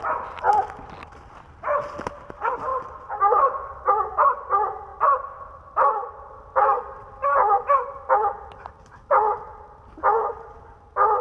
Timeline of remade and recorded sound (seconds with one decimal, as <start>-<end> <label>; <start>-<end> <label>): 0.0-11.2 recorded